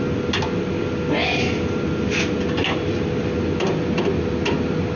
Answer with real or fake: real